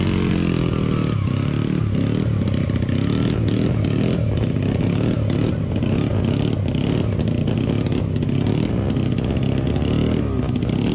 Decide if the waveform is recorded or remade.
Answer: recorded